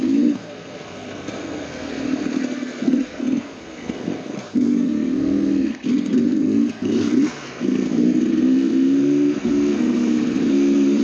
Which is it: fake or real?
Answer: fake